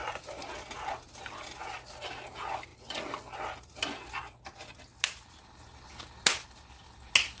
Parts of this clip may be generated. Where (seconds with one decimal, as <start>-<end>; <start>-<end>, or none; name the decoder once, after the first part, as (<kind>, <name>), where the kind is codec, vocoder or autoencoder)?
none